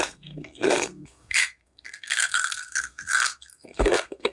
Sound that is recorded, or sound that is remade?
remade